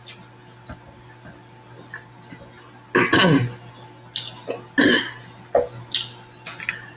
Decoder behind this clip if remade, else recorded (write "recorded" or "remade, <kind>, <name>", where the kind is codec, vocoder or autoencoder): recorded